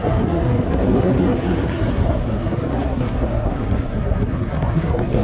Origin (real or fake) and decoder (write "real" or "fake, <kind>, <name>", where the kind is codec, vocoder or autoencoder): fake, codec, SNAC